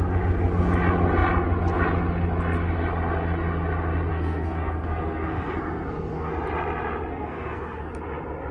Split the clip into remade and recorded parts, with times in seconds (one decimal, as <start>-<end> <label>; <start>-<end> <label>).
0.0-4.1 recorded; 4.1-6.3 remade; 6.3-7.1 recorded; 7.1-7.9 remade; 7.9-8.5 recorded